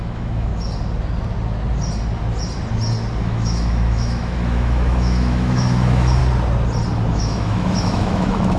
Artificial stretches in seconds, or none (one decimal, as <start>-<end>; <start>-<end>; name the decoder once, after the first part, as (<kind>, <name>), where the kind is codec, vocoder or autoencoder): 0.0-0.5 (autoencoder, DAC-VAE); 3.2-6.2; 7.1-8.6